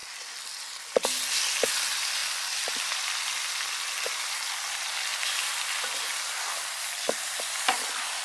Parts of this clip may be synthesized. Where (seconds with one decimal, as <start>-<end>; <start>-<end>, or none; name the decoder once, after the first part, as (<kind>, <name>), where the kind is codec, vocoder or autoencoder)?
2.2-3.1 (vocoder, BigVGAN v2)